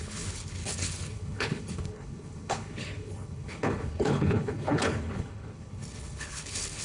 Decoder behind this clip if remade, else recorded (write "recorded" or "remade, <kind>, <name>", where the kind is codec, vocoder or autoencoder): remade, codec, HILCodec